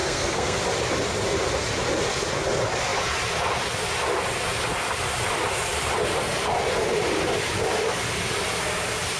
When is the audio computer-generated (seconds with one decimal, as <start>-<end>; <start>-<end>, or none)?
0.0-0.6